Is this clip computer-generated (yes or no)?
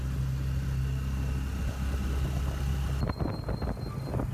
no